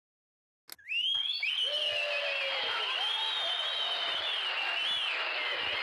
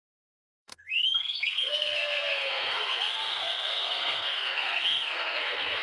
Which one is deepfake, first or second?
second